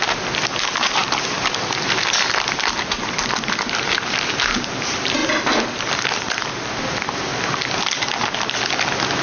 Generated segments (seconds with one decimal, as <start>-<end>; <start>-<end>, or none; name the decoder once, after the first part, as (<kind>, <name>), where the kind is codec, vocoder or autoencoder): 0.0-7.3 (vocoder, BigVGAN v2); 7.8-9.2